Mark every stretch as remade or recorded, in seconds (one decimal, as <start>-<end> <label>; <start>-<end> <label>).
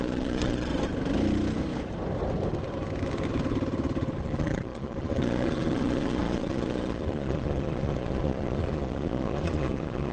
0.0-0.7 remade; 0.7-4.2 recorded; 4.2-10.1 remade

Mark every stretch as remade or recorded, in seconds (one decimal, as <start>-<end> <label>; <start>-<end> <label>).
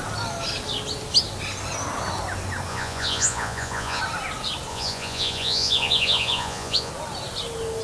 0.0-2.7 recorded; 2.7-4.0 remade; 4.0-4.7 recorded; 4.7-6.9 remade; 6.9-7.8 recorded